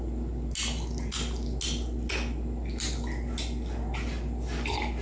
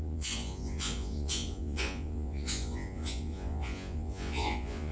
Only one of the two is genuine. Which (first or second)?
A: first